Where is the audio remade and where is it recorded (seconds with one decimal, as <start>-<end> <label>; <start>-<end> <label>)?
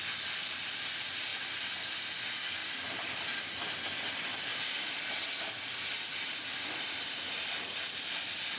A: 0.0-2.6 recorded; 2.6-3.6 remade; 3.6-8.6 recorded